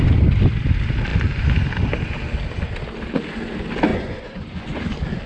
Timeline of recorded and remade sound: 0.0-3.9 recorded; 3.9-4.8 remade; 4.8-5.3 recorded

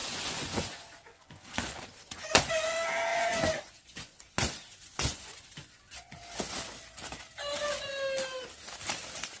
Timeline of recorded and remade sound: 0.0-2.5 remade; 2.5-3.1 recorded; 3.1-6.2 remade; 6.2-9.4 recorded

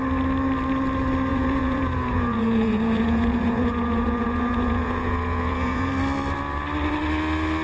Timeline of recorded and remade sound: 0.0-1.3 recorded; 1.3-5.9 remade; 5.9-7.6 recorded